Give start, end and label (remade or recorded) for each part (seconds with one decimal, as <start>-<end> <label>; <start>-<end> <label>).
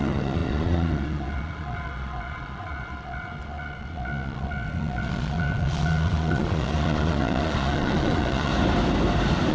0.0-8.5 remade; 8.5-9.5 recorded